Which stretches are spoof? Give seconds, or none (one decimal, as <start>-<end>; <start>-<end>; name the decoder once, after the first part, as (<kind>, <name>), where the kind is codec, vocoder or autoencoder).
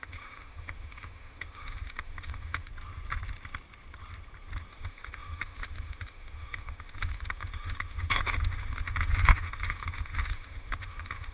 0.0-2.7 (autoencoder, DAC-VAE); 4.7-11.3